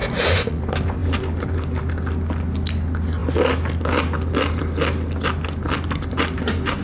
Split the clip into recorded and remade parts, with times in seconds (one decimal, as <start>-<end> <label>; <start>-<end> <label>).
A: 0.0-0.6 remade; 0.6-6.8 recorded